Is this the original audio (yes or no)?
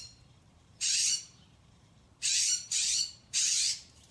no